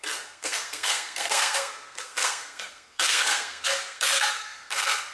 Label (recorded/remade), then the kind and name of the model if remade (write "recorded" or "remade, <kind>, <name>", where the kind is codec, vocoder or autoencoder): remade, codec, SNAC